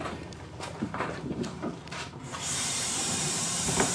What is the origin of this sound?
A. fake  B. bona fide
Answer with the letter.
A